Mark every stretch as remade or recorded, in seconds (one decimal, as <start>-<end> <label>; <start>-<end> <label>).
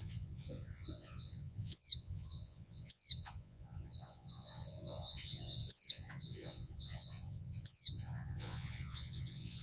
0.0-9.6 remade